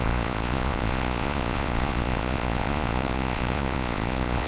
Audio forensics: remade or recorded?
remade